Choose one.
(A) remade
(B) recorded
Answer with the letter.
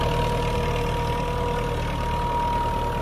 B